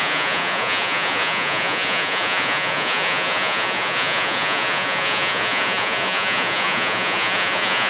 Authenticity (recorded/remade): remade